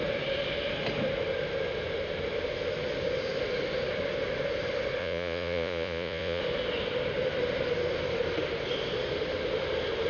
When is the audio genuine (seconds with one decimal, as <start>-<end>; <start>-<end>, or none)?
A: 0.0-5.0; 6.4-10.1